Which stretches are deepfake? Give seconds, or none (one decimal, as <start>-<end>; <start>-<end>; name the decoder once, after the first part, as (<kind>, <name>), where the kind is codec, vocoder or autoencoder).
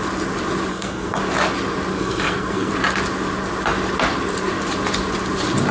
0.7-1.2 (codec, SNAC); 1.9-2.7